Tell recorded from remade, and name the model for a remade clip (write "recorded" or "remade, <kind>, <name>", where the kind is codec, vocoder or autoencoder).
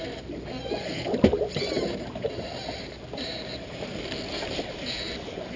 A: recorded